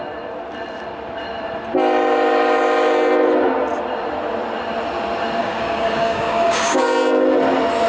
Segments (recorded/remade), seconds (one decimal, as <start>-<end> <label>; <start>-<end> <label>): 0.0-5.4 recorded; 5.4-6.8 remade; 6.8-7.9 recorded